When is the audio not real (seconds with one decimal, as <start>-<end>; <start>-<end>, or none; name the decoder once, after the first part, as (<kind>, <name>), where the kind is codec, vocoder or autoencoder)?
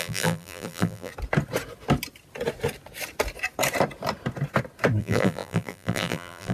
0.0-1.1 (vocoder, BigVGAN v2); 5.0-6.5